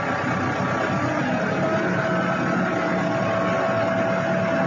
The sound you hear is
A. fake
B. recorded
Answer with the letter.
B